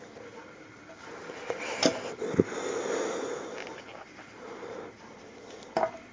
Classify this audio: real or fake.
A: real